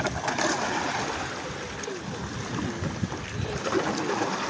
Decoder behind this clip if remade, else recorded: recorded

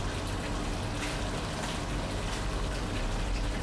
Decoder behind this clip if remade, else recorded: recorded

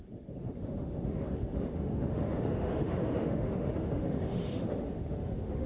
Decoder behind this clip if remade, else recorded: remade, autoencoder, DAC-VAE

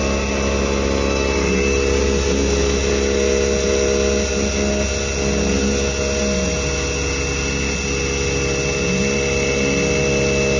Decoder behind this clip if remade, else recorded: recorded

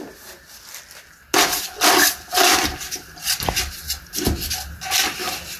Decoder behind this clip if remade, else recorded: recorded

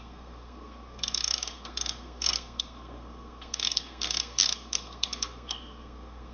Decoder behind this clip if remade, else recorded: remade, codec, SNAC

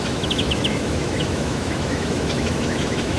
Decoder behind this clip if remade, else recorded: remade, autoencoder, DAC-VAE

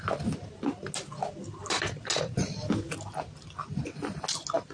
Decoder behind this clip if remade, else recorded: recorded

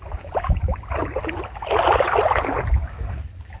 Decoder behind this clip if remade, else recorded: recorded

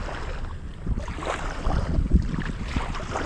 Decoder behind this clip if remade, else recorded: recorded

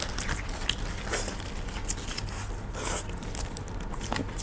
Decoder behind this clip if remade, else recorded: recorded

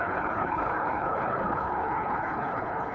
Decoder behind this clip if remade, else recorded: remade, codec, HILCodec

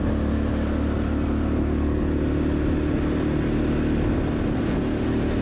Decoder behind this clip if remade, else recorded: recorded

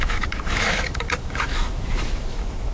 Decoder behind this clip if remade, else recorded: remade, autoencoder, DAC-VAE